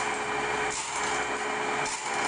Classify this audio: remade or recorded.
recorded